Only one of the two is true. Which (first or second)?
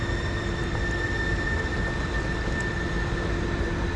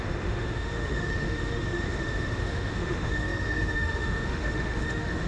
first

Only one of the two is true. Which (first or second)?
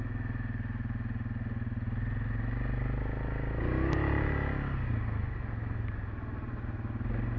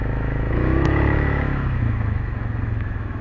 first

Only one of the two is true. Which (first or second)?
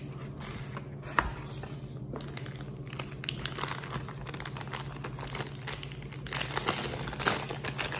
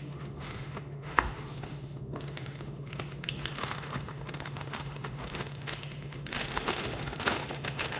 first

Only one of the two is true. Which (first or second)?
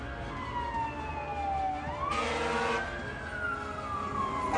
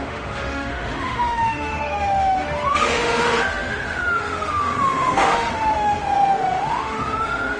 first